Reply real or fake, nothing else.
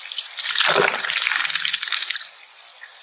real